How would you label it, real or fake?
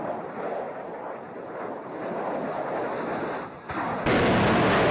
real